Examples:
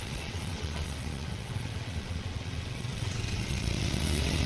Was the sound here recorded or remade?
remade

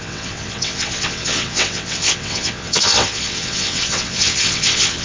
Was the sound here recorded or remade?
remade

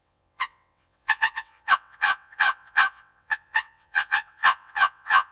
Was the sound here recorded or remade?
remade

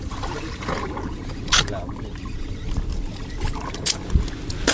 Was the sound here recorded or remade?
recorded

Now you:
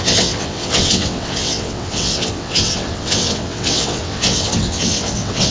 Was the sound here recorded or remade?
remade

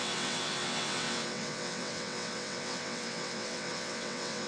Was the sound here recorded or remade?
remade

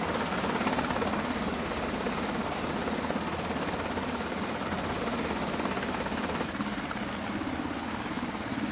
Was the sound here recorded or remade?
recorded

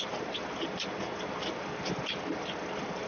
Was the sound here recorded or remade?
recorded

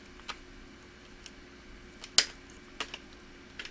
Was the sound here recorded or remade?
recorded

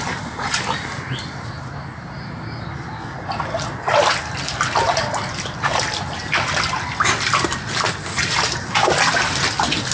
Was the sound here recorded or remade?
recorded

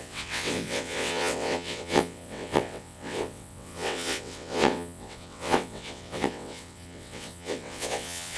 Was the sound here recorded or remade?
remade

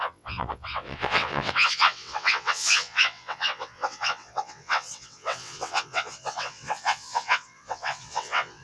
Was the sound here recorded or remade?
remade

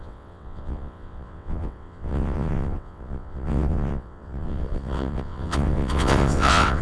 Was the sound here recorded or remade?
remade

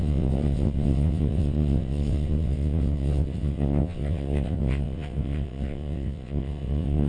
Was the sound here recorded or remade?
remade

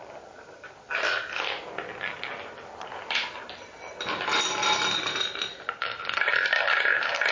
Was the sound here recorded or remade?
recorded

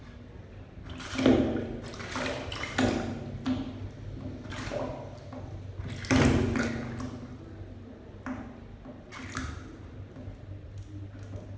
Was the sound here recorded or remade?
recorded